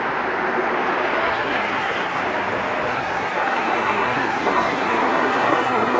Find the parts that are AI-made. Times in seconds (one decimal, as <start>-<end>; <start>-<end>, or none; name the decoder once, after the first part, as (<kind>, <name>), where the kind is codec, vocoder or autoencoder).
1.1-2.2 (codec, SNAC); 2.9-6.0